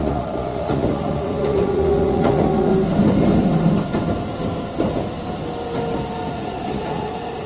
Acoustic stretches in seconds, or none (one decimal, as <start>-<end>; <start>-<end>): 2.7-6.3

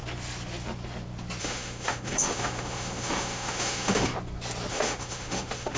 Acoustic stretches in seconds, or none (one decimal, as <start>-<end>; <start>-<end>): 0.0-1.4; 4.1-4.7

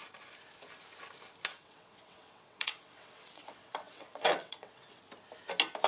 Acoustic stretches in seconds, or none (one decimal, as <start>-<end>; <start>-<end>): 0.0-1.5; 5.0-5.9

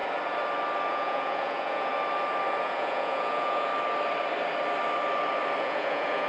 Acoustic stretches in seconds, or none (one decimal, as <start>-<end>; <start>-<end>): 0.0-0.9; 1.9-2.6; 3.7-5.6